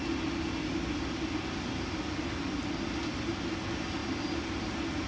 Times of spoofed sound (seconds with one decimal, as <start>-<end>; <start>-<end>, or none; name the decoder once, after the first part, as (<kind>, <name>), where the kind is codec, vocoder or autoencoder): none